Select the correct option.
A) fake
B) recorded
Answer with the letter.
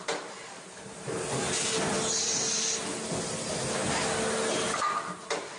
B